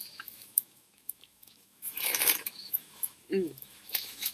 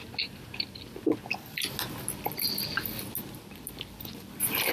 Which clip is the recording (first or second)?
second